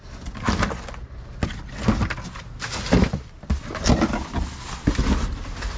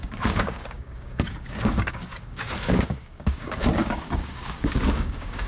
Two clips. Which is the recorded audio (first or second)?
first